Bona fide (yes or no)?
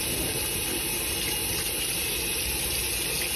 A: yes